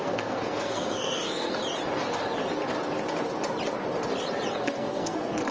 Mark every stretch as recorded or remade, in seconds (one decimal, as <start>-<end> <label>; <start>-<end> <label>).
0.0-1.6 remade; 1.6-4.5 recorded; 4.5-5.5 remade